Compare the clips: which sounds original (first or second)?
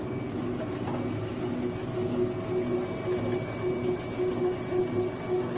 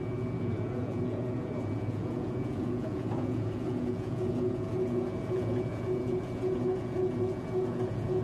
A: first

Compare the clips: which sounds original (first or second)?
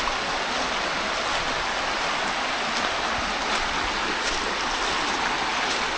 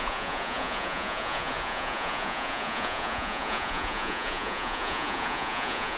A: first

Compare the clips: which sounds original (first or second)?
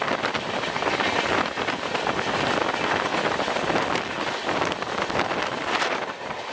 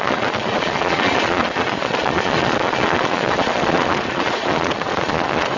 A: first